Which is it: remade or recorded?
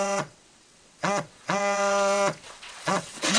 remade